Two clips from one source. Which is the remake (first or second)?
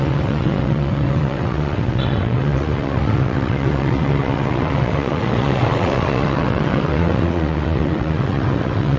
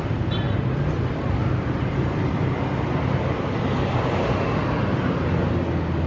first